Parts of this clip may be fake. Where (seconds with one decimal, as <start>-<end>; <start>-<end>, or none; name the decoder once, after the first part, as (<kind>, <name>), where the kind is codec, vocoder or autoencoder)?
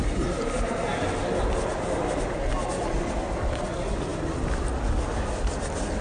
none